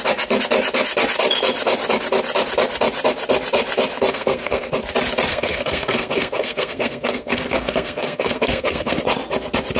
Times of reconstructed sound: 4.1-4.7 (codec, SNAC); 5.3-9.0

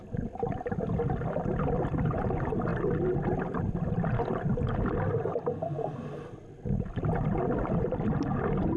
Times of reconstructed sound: none

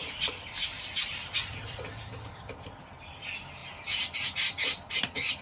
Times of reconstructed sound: 0.0-3.2 (vocoder, BigVGAN v2); 3.6-5.0

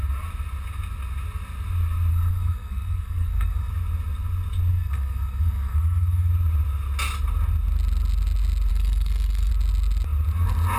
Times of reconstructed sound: 2.1-3.7 (codec, SNAC); 4.7-6.3; 8.7-9.5